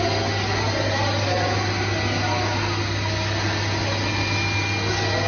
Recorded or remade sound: recorded